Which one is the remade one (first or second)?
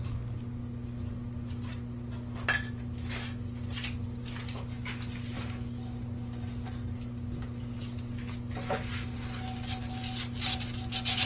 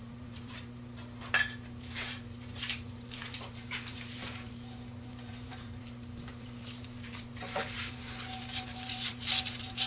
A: second